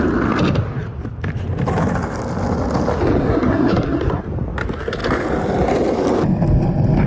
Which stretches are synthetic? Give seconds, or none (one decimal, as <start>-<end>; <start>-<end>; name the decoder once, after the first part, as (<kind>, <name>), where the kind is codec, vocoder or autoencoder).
3.2-4.0 (codec, SNAC)

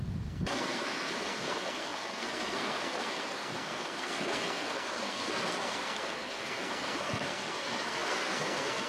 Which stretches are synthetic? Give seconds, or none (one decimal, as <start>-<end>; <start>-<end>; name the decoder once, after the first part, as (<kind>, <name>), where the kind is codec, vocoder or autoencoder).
0.0-8.9 (codec, SNAC)

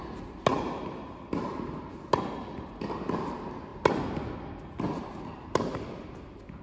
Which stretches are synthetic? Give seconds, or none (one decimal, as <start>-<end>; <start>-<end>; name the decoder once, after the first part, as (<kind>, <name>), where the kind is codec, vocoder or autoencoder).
none

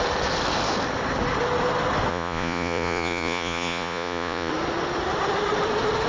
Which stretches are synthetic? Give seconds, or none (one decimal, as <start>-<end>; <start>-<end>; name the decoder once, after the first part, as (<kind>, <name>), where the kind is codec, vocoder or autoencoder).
2.1-4.5 (vocoder, Vocos)